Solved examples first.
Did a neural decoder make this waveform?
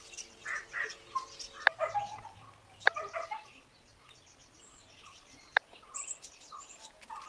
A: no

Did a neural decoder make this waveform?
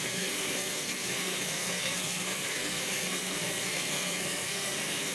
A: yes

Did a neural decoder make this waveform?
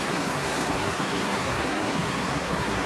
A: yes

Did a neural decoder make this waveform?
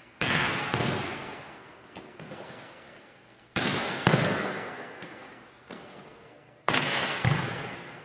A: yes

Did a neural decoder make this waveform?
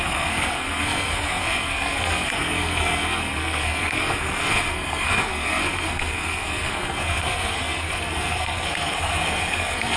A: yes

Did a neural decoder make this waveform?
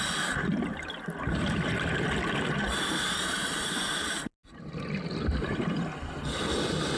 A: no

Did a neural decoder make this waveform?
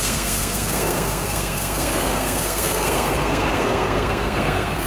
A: yes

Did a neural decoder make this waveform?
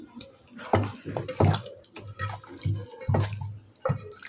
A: no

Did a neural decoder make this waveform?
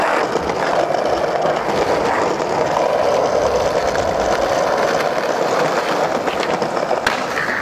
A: no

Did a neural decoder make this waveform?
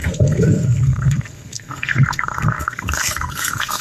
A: yes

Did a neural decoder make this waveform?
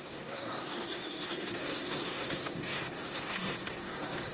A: yes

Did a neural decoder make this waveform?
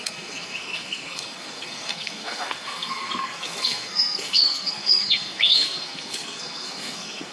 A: yes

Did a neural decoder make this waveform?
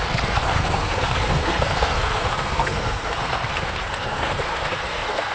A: yes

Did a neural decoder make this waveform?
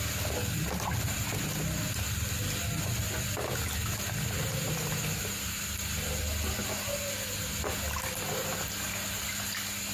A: no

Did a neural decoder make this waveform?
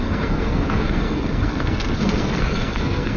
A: yes